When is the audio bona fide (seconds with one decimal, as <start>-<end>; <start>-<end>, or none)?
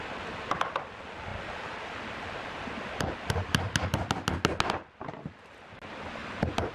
0.0-6.7